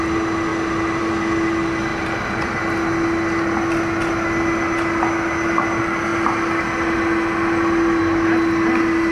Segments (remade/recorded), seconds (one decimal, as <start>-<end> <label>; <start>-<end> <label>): 0.0-1.9 recorded; 1.9-2.6 remade; 2.6-9.1 recorded